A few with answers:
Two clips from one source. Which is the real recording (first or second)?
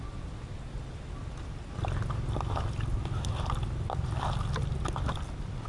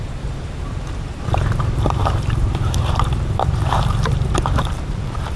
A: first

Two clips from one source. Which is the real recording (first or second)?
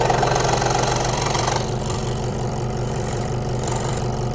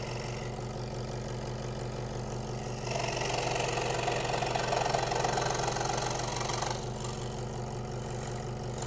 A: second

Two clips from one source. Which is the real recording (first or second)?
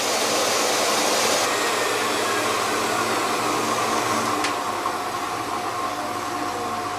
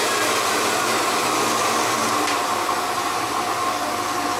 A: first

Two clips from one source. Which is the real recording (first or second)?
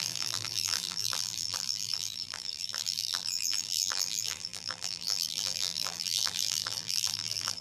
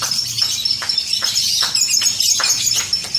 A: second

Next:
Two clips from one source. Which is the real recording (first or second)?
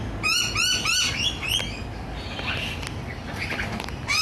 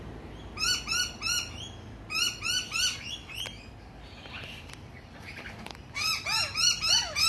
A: first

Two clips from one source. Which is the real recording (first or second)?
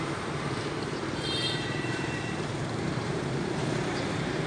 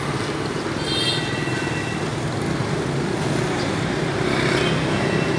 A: second